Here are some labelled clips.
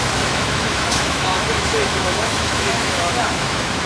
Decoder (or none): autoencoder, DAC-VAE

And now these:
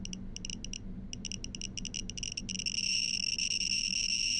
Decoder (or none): none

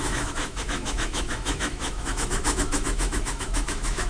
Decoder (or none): autoencoder, DAC-VAE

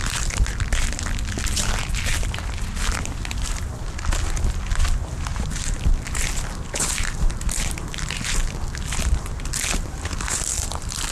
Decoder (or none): none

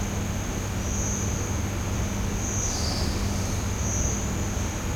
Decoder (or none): none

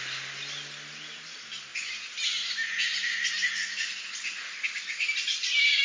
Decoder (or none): none